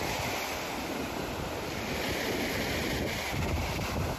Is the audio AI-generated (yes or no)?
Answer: no